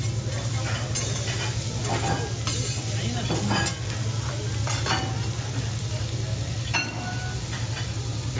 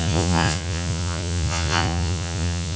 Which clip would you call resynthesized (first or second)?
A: second